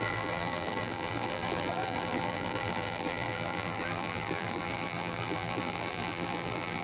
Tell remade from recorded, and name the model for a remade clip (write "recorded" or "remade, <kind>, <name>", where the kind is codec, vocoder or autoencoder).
remade, vocoder, BigVGAN v2